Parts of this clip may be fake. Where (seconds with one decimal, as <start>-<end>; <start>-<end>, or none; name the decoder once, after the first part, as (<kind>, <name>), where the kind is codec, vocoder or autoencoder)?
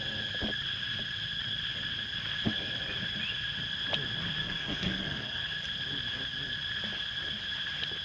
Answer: 4.4-5.4 (codec, SNAC)